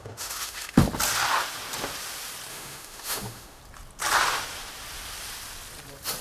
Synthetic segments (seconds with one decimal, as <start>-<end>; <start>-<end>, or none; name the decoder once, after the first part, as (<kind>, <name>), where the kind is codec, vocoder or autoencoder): 0.0-0.8 (autoencoder, DAC-VAE); 2.5-3.6